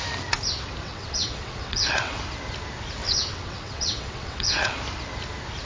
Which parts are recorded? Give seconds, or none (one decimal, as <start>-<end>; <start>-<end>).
0.0-0.8; 2.2-3.0; 4.7-5.7